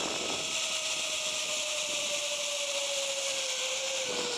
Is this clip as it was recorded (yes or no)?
yes